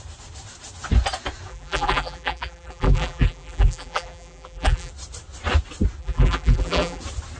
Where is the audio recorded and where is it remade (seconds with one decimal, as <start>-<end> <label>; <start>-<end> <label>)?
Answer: 0.0-1.5 recorded; 1.5-4.9 remade; 4.9-6.0 recorded; 6.0-7.0 remade; 7.0-7.4 recorded